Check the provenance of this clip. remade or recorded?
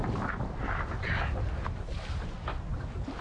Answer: recorded